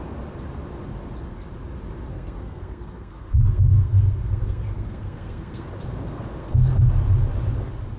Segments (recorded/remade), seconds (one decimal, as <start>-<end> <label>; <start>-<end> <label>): 0.0-2.1 recorded; 2.1-5.7 remade; 5.7-6.4 recorded; 6.4-6.9 remade; 6.9-8.0 recorded